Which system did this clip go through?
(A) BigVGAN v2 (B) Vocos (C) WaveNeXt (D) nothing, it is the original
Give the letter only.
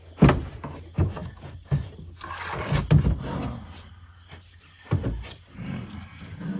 D